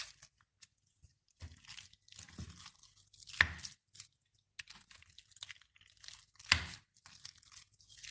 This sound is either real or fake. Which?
real